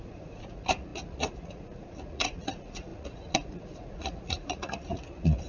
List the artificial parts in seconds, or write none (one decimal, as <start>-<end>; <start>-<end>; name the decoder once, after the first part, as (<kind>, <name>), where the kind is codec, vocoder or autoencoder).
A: 0.0-5.5 (vocoder, Vocos)